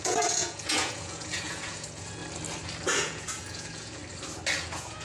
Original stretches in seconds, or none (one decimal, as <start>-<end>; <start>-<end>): 2.2-2.9; 4.0-4.6